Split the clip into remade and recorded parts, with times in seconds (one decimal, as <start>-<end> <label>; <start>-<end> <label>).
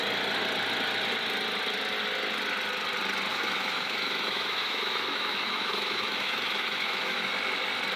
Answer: 0.0-3.3 recorded; 3.3-7.3 remade; 7.3-8.0 recorded